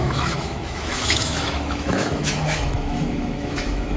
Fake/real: fake